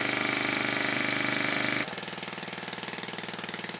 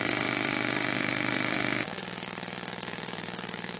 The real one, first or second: first